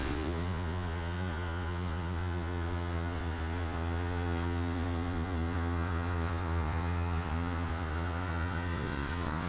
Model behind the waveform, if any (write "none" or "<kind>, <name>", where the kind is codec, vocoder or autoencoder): vocoder, Vocos